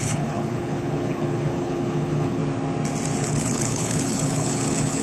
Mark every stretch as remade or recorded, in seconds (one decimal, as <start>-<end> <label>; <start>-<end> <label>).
0.0-2.4 remade; 2.4-3.2 recorded; 3.2-5.0 remade